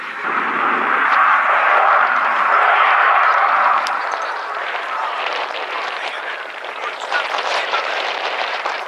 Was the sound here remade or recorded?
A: remade